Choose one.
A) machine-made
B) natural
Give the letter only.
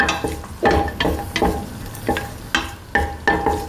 B